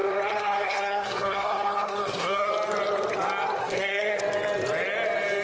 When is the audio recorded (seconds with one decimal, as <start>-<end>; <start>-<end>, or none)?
2.5-3.6; 4.2-5.4